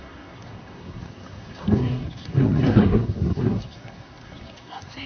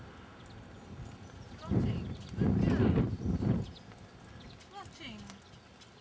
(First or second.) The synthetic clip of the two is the first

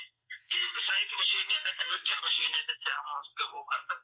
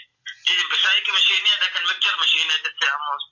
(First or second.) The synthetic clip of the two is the first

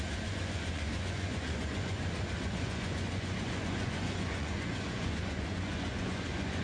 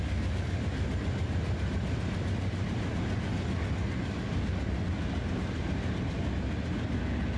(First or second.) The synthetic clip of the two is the first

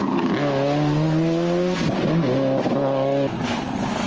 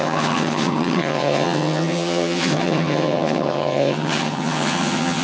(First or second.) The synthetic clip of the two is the second